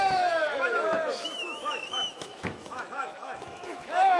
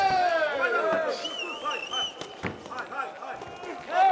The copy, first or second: first